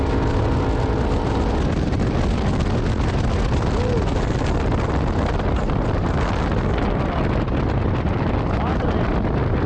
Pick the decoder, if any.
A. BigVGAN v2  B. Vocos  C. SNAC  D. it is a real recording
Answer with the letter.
D